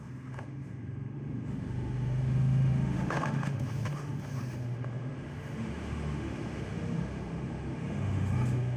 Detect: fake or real fake